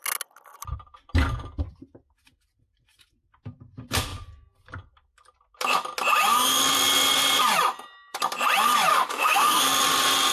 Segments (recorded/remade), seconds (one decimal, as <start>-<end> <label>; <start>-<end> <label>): 0.0-8.9 recorded; 8.9-9.6 remade; 9.6-10.3 recorded